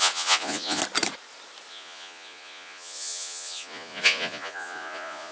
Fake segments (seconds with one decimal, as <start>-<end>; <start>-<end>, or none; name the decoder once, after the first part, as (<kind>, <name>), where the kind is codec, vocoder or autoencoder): 0.0-0.8 (vocoder, Vocos); 1.7-5.3

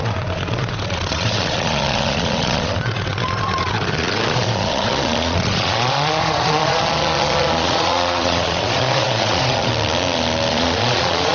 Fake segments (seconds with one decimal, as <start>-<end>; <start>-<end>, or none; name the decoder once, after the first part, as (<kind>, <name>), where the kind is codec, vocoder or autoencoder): 0.0-9.7 (vocoder, Vocos); 10.5-11.3

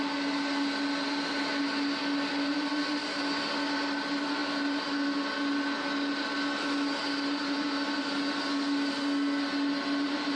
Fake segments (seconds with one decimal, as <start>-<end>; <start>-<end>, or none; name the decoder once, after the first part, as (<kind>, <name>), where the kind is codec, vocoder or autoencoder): none